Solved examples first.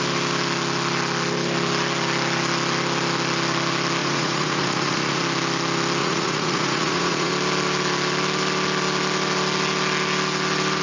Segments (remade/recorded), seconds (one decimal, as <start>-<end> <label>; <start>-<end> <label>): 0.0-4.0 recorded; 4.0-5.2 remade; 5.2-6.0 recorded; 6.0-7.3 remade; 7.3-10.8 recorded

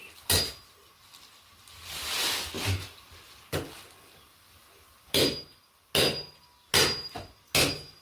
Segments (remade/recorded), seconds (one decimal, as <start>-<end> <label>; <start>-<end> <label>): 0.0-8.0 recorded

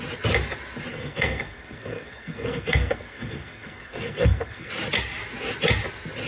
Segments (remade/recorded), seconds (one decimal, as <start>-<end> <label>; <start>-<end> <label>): 0.0-0.9 recorded; 0.9-4.7 remade; 4.7-6.3 recorded

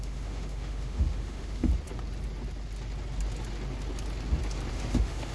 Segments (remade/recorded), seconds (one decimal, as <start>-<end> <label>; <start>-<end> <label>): 0.0-1.7 remade; 1.7-4.7 recorded; 4.7-5.3 remade

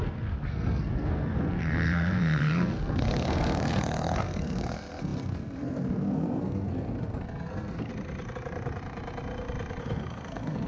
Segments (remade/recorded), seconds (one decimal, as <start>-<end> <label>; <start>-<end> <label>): 0.0-7.9 remade; 7.9-9.8 recorded; 9.8-10.7 remade

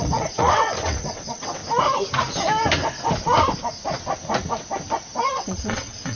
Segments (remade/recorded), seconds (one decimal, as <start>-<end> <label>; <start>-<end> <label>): 0.0-1.6 remade; 1.6-5.3 recorded; 5.3-6.2 remade

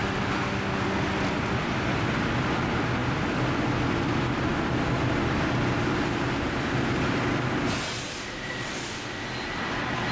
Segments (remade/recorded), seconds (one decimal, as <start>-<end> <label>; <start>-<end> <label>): 0.0-10.1 recorded